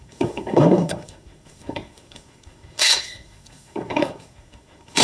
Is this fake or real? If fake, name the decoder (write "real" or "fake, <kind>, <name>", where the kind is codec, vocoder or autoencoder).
fake, codec, SNAC